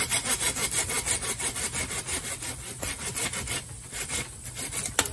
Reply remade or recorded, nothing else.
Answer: recorded